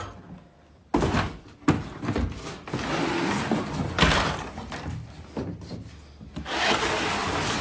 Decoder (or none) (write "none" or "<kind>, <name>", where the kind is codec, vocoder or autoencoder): none